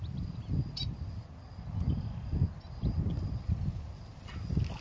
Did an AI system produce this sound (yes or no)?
no